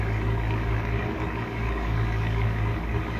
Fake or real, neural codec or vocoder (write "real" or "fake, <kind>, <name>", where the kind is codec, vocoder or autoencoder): fake, codec, DAC